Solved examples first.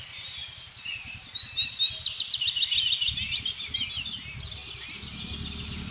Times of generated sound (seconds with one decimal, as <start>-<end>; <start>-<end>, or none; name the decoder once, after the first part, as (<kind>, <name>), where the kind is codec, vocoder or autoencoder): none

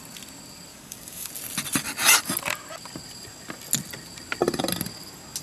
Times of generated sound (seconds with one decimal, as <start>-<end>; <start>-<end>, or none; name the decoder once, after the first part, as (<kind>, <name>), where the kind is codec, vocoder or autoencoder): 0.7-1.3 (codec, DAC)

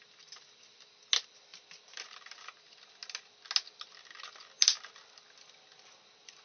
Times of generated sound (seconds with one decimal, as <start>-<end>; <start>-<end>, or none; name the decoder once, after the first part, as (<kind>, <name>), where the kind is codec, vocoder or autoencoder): none

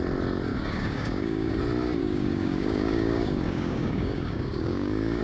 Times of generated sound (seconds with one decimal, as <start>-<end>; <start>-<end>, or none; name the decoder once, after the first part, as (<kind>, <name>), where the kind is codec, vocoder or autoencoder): 0.5-1.6 (codec, DAC); 2.0-5.2

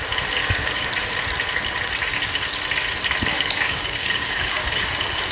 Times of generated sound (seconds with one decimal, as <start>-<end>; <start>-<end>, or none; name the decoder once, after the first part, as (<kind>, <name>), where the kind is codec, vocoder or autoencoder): 0.4-0.9 (codec, DAC); 3.3-4.7

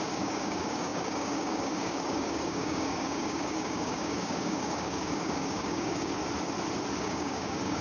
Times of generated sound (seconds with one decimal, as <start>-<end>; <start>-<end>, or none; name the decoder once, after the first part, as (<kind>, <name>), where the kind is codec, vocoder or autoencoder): 0.0-6.2 (codec, DAC); 7.0-7.8

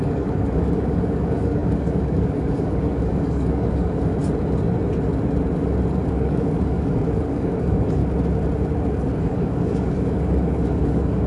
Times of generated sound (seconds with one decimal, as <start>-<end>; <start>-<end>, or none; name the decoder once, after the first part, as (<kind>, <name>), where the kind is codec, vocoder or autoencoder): 0.0-4.1 (codec, DAC); 6.1-8.0; 9.2-11.3

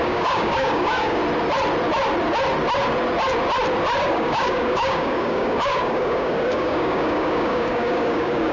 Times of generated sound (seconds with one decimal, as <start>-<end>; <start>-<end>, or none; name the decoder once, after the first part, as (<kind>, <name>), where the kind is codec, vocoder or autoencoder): 0.0-1.2 (codec, DAC); 4.1-8.5